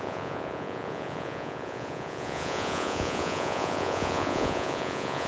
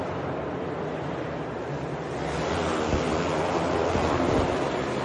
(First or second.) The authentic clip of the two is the second